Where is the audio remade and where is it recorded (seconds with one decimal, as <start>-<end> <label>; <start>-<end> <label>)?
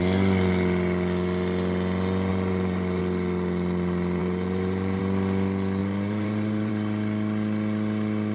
0.0-2.3 recorded; 2.3-3.0 remade; 3.0-4.2 recorded; 4.2-5.0 remade; 5.0-5.8 recorded; 5.8-6.7 remade; 6.7-8.3 recorded